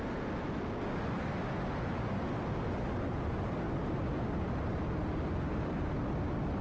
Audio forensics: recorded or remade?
recorded